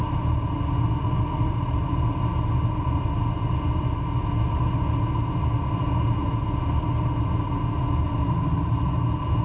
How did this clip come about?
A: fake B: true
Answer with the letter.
B